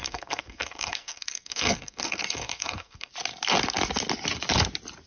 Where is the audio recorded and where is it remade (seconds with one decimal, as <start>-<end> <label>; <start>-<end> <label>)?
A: 0.0-3.1 remade; 3.1-5.1 recorded